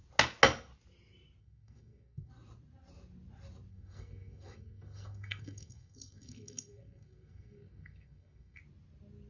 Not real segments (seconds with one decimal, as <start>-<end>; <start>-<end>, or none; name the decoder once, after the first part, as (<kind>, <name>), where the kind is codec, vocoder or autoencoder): 1.4-2.3 (codec, SNAC); 3.7-8.6